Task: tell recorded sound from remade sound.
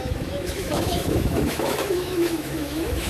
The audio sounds remade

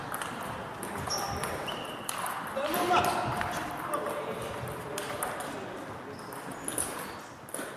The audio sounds recorded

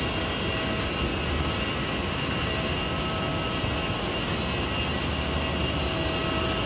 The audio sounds recorded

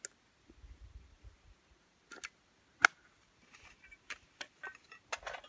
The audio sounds recorded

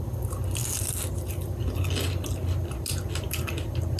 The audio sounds recorded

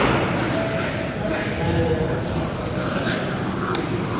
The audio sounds recorded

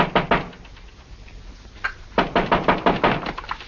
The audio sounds recorded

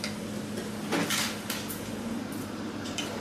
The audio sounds recorded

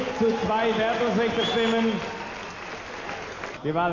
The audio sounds recorded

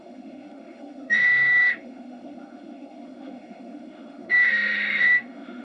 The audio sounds remade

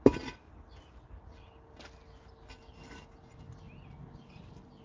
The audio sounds recorded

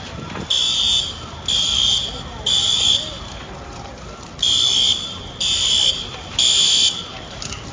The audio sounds recorded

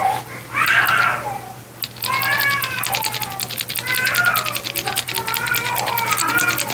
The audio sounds recorded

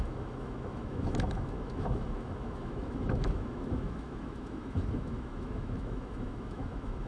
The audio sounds remade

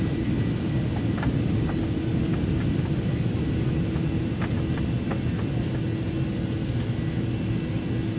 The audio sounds recorded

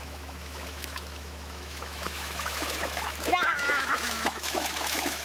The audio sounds remade